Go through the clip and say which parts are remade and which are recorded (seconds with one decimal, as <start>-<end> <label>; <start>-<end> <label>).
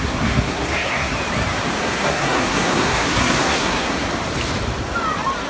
0.0-1.1 remade; 1.1-1.8 recorded; 1.8-4.1 remade; 4.1-5.5 recorded